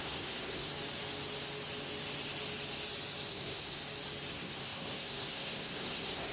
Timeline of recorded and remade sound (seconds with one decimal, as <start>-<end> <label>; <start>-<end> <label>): 0.0-0.7 remade; 0.7-3.3 recorded; 3.3-3.8 remade; 3.8-4.3 recorded; 4.3-6.3 remade